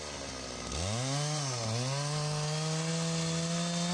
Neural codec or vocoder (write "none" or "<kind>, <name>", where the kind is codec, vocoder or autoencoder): none